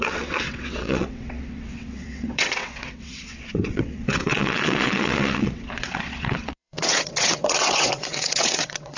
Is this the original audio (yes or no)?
no